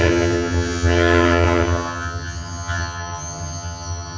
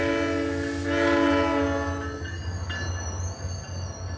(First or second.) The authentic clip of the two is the second